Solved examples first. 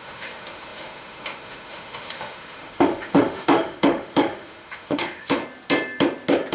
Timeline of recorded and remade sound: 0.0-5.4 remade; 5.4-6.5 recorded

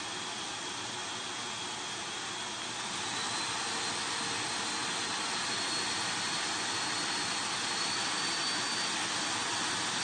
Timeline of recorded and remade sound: 0.0-10.0 recorded

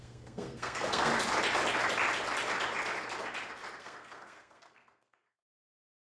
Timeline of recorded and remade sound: 0.0-1.1 remade; 1.1-3.8 recorded; 3.8-6.0 remade